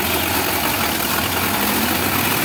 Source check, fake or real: real